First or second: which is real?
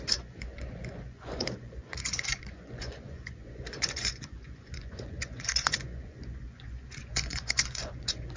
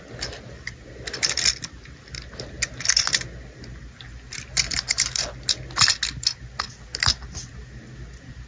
second